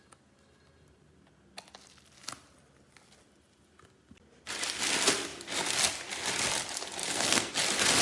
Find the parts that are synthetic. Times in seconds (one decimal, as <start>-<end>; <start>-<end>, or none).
7.0-7.5